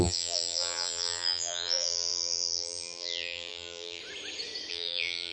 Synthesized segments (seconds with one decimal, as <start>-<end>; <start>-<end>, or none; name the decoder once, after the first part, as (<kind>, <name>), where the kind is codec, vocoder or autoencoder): 0.0-4.0 (vocoder, BigVGAN v2); 4.7-5.3